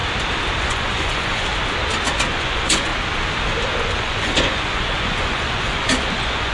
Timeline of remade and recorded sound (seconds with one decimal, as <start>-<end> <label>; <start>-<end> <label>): 0.0-0.6 recorded; 0.6-1.5 remade; 1.5-2.3 recorded; 2.3-2.9 remade; 2.9-3.8 recorded; 3.8-6.5 remade